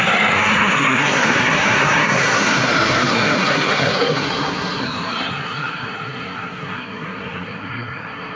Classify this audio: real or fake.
fake